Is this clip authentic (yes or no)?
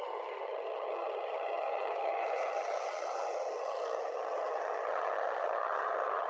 no